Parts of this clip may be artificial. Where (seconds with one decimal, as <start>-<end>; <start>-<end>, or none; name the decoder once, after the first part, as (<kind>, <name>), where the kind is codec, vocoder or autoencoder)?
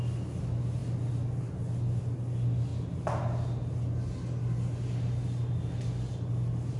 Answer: none